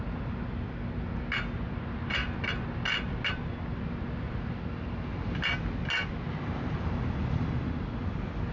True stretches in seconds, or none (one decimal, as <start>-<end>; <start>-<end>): 0.0-8.5